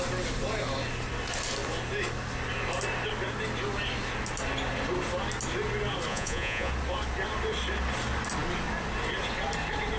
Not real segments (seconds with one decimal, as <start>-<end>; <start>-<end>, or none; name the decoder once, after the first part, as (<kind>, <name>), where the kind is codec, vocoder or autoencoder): 6.1-6.7 (vocoder, Vocos)